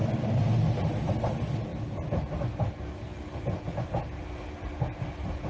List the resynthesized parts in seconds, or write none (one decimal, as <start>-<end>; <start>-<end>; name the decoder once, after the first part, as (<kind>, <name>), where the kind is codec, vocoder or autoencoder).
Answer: none